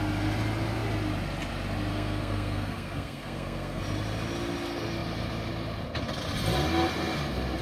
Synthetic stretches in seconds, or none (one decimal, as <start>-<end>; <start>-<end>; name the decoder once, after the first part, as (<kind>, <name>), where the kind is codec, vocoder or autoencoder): 1.9-3.8 (codec, SNAC)